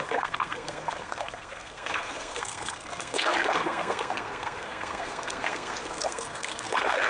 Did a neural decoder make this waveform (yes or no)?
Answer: yes